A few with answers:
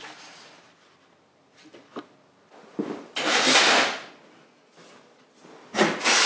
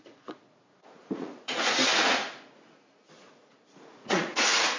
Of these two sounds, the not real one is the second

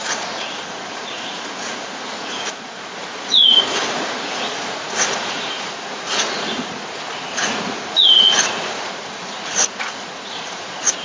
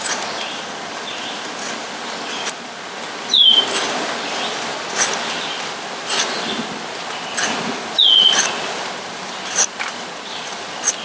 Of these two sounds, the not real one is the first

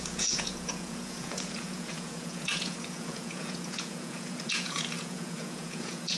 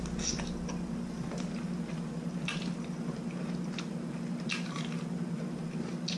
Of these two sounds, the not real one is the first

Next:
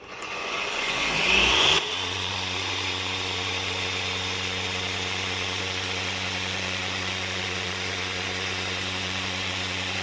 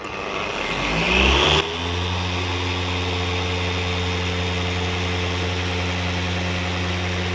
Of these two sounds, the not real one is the first